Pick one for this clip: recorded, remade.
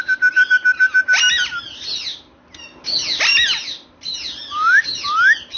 recorded